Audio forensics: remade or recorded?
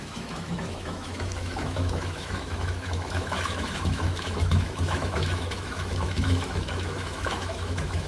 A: remade